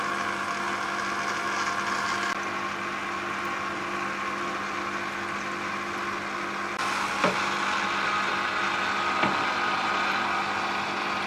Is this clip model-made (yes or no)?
no